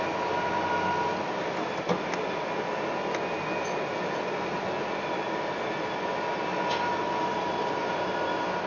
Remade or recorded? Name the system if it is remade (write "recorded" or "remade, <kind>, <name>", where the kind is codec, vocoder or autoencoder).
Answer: recorded